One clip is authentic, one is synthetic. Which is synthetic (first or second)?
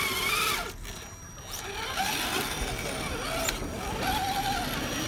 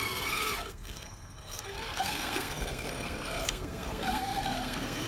second